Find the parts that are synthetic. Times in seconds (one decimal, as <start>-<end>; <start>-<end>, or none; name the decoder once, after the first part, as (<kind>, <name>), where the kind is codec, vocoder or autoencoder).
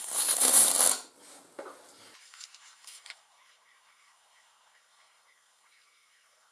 0.0-0.7 (codec, SNAC); 2.2-6.5